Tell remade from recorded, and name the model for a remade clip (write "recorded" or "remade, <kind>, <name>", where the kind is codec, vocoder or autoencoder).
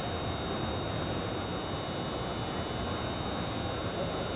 recorded